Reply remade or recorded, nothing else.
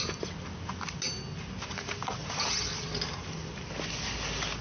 recorded